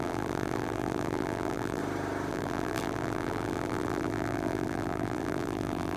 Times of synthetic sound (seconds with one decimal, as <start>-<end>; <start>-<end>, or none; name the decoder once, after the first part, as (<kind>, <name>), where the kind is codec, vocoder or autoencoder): 0.0-1.8 (vocoder, BigVGAN v2); 2.3-6.0